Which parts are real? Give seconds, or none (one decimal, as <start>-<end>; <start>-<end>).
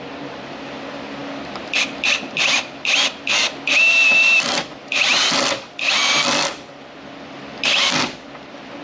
none